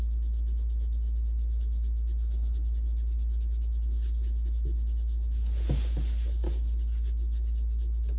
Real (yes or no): yes